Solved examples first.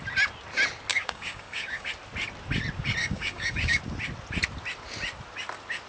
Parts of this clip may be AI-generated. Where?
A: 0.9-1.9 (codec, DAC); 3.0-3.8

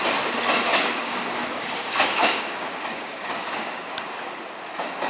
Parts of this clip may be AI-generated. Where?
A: 0.7-3.8 (codec, DAC)

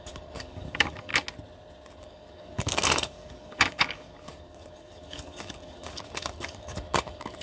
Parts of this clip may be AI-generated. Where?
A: 0.0-1.1 (codec, DAC); 2.0-7.4

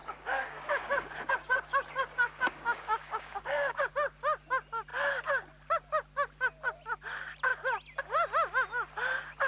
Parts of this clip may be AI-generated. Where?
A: 0.0-3.9 (codec, DAC)

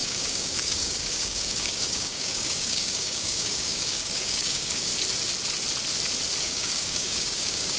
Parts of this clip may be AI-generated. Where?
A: 0.0-4.9 (codec, DAC); 6.4-7.8

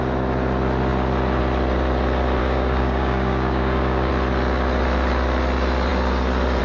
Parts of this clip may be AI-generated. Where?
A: 2.4-4.1 (codec, DAC)

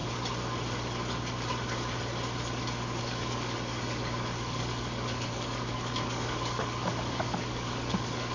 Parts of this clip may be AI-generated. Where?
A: 3.0-8.3 (codec, DAC)

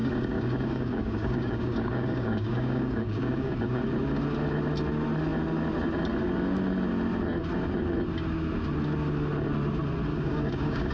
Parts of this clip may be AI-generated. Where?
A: 0.0-3.8 (codec, DAC); 10.1-10.9